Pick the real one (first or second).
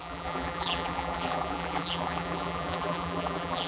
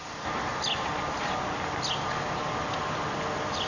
second